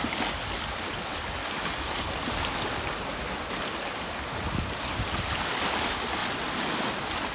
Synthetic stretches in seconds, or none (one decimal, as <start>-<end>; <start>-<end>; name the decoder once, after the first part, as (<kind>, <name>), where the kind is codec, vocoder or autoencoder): none